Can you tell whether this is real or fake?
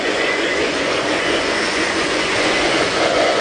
fake